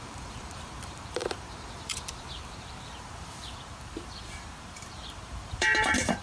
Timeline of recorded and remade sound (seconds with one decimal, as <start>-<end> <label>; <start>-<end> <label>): 0.0-6.2 remade